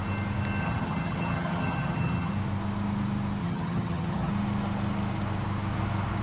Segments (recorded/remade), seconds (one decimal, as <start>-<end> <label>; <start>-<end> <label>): 0.0-0.6 recorded; 0.6-2.3 remade; 2.3-3.4 recorded; 3.4-4.3 remade; 4.3-6.2 recorded